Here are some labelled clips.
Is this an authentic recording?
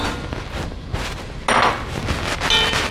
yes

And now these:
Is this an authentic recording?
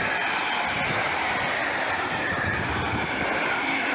yes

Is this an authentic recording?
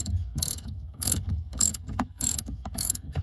no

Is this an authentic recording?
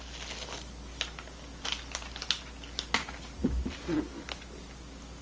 yes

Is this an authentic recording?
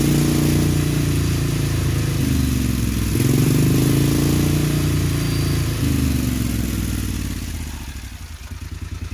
yes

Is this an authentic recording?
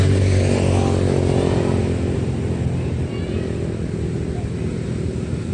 yes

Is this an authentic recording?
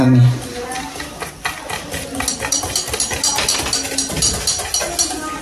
yes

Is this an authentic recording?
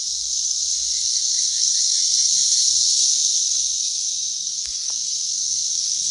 no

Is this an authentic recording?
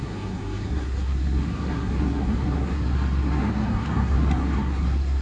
no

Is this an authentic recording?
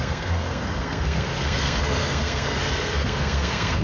no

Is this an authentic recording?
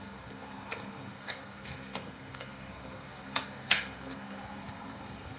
no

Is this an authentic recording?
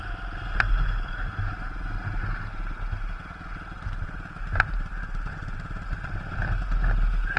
yes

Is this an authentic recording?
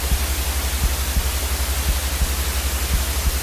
yes